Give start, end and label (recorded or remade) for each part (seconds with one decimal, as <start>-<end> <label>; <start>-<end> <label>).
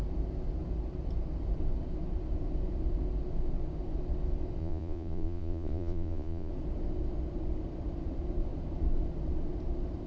0.0-4.6 recorded; 4.6-6.5 remade; 6.5-10.1 recorded